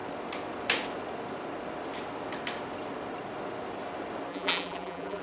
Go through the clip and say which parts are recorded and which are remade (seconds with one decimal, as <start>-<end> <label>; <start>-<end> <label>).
0.0-4.3 recorded; 4.3-5.2 remade